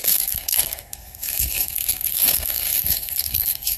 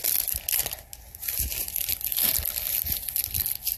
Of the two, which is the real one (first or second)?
second